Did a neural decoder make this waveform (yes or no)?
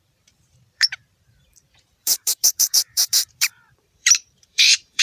yes